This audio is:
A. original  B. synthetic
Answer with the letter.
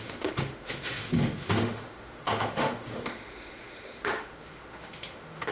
B